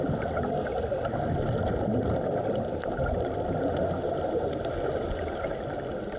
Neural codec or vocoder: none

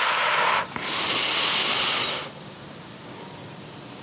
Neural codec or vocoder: none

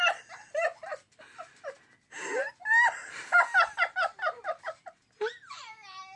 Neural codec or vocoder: none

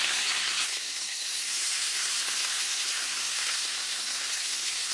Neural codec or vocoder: codec, SNAC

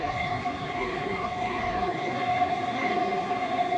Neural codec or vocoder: codec, SNAC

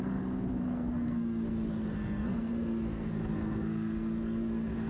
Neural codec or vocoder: codec, SNAC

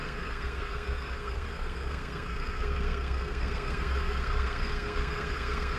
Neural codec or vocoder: codec, SNAC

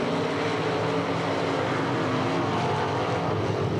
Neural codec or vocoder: none